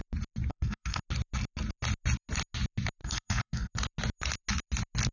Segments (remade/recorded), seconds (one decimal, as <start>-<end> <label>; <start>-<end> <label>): 0.0-0.5 recorded; 0.5-1.0 remade; 1.0-3.0 recorded; 3.0-3.7 remade; 3.7-5.1 recorded